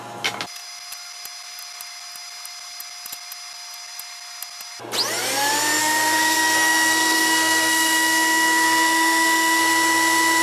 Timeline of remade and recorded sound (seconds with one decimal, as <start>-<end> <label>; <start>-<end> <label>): 0.0-5.8 recorded; 5.8-9.6 remade; 9.6-10.4 recorded

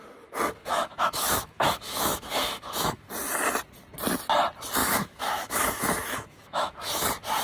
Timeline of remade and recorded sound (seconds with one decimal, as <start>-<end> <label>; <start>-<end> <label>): 0.0-0.6 recorded; 0.6-3.1 remade; 3.1-4.8 recorded; 4.8-6.9 remade; 6.9-7.4 recorded

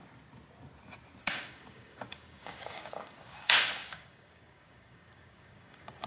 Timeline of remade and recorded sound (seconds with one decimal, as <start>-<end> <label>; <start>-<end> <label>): 0.0-1.2 recorded; 1.2-6.1 remade

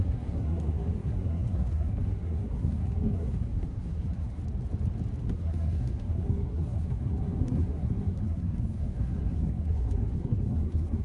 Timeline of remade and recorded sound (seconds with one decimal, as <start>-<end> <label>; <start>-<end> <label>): 0.0-4.4 remade; 4.4-5.2 recorded; 5.2-11.0 remade

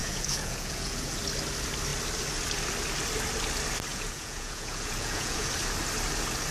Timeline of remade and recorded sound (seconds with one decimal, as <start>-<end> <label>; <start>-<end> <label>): 0.0-1.2 remade; 1.2-3.9 recorded; 3.9-5.5 remade; 5.5-6.5 recorded